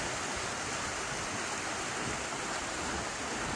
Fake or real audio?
real